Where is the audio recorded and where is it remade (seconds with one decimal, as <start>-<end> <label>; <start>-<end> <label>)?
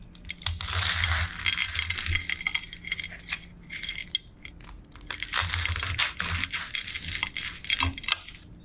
0.0-8.6 recorded